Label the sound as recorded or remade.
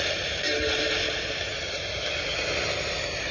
recorded